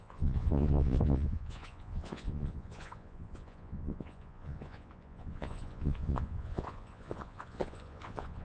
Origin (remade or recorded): remade